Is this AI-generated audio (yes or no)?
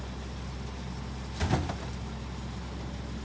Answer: no